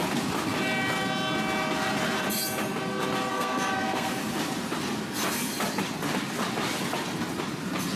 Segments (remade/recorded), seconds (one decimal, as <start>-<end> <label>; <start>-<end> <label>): 0.0-3.3 recorded; 3.3-4.1 remade; 4.1-8.0 recorded

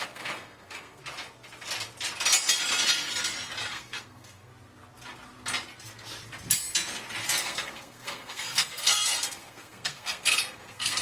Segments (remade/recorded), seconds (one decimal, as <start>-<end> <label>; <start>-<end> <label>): 0.0-1.0 remade; 1.0-3.7 recorded; 3.7-4.5 remade; 4.5-7.4 recorded; 7.4-11.0 remade

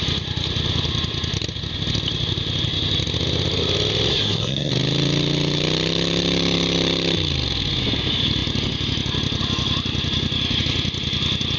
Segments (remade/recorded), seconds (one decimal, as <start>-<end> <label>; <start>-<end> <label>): 0.0-4.1 recorded; 4.1-4.7 remade; 4.7-11.6 recorded